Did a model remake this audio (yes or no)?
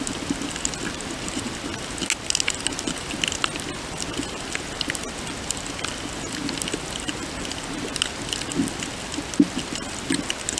no